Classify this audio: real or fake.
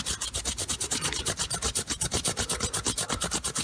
real